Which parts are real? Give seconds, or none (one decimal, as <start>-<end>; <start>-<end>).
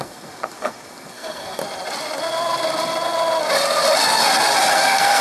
1.6-4.7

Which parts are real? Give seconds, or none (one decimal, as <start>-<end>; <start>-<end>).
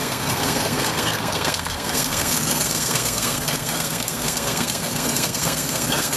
none